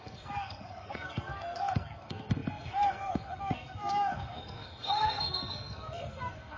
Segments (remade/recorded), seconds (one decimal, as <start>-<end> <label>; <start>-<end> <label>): 0.0-6.6 remade